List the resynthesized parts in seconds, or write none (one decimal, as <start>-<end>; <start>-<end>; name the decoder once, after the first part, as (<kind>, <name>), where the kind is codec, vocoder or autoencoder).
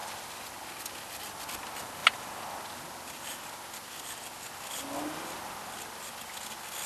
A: none